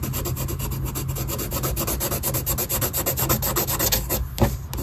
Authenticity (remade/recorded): recorded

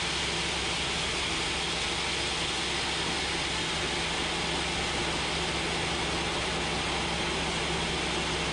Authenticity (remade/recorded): recorded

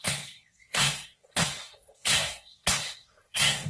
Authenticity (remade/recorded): remade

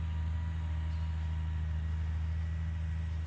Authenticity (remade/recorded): recorded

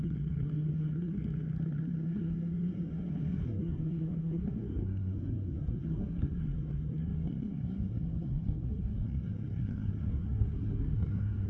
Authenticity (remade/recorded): remade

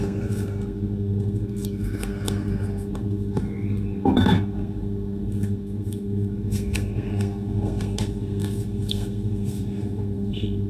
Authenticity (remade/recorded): remade